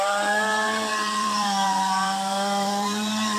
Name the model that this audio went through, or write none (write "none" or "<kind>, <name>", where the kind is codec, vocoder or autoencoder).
vocoder, BigVGAN v2